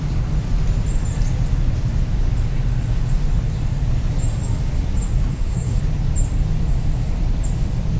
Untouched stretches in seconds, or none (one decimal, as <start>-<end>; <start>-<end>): 0.0-5.3; 5.8-8.0